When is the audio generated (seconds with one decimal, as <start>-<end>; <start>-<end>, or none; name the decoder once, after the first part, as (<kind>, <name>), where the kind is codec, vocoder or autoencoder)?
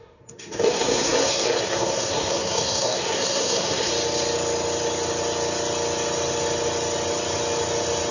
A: 0.0-3.9 (codec, SNAC)